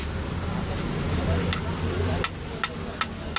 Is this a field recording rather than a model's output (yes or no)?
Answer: yes